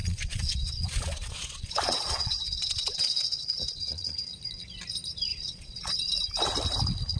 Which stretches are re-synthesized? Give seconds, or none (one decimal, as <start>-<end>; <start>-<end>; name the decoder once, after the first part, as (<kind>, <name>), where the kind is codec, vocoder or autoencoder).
0.0-4.3 (vocoder, Vocos); 5.3-5.9